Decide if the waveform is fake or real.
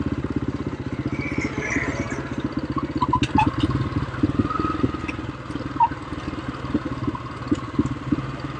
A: real